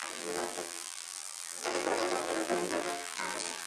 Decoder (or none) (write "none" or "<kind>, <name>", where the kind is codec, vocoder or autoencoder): vocoder, BigVGAN v2